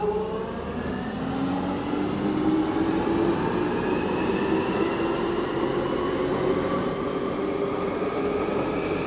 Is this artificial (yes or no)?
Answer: no